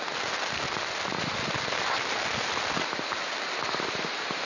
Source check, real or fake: real